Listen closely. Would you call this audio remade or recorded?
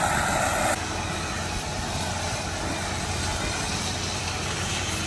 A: recorded